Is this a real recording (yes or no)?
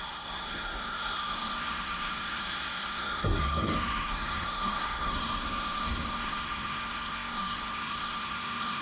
no